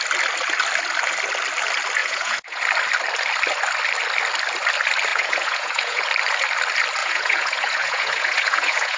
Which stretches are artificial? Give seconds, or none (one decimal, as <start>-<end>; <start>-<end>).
2.0-2.6; 5.1-6.0; 7.0-9.0